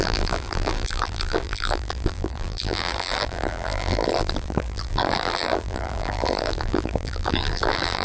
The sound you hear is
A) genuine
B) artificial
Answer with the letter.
B